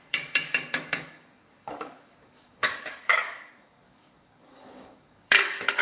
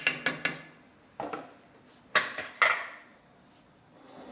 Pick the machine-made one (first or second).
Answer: first